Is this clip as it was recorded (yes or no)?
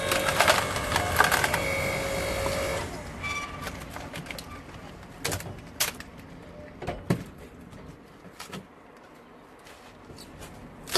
yes